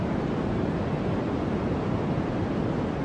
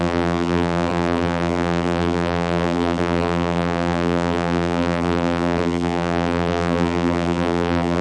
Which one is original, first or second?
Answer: first